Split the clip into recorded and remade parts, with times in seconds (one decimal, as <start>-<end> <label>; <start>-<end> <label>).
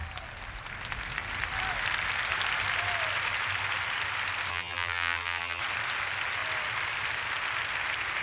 0.0-4.5 recorded; 4.5-5.6 remade; 5.6-8.2 recorded